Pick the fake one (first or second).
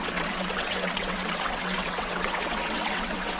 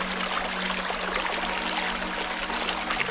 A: first